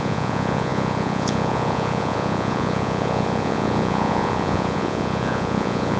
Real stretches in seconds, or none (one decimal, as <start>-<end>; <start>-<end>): none